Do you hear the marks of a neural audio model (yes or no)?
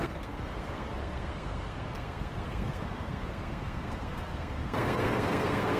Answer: yes